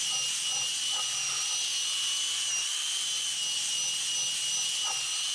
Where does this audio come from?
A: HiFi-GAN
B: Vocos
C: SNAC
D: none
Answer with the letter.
D